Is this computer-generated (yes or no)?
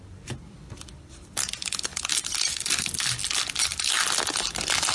no